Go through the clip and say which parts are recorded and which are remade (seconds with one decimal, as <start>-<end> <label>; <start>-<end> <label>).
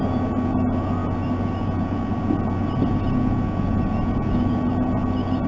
0.0-5.5 recorded